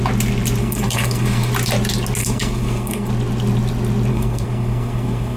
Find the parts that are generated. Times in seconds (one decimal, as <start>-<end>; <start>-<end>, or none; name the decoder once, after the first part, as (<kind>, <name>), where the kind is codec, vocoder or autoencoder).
0.6-1.5 (codec, SNAC); 2.2-3.1; 4.1-5.4